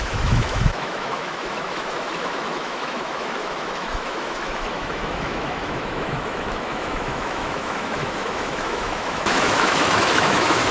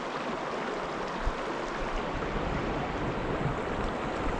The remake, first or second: first